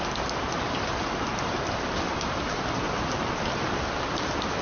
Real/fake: real